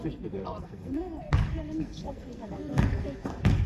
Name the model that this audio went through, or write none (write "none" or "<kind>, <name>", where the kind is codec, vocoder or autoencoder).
codec, SNAC